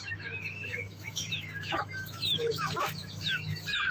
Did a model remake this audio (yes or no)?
yes